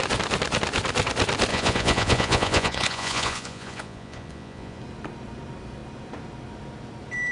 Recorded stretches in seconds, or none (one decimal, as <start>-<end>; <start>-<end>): 0.0-1.5; 4.8-7.3